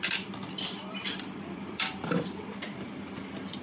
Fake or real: fake